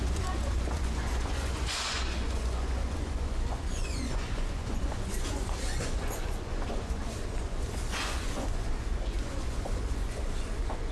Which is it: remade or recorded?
remade